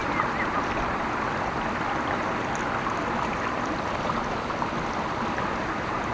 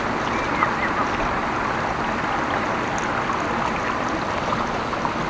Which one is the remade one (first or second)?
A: first